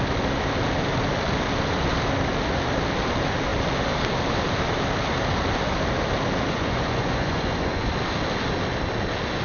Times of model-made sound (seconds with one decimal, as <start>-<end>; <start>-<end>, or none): 6.5-7.9